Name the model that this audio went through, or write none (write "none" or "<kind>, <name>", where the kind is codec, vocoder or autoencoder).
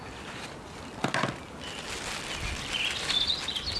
none